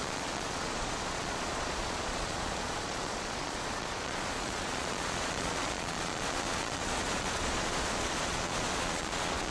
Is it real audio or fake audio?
fake